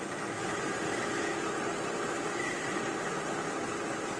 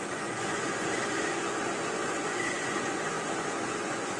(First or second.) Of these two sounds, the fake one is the second